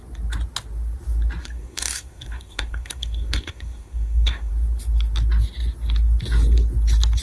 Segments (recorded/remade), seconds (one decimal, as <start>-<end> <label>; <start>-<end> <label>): 0.0-1.4 recorded; 1.4-4.5 remade; 4.5-7.2 recorded